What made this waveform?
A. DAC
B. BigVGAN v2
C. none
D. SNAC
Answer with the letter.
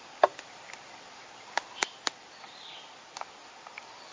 B